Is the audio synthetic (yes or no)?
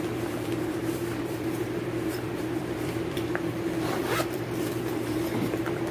yes